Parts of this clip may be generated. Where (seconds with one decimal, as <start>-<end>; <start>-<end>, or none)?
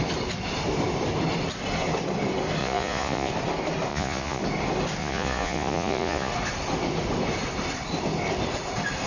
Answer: 2.6-3.3; 3.9-4.4; 5.0-6.3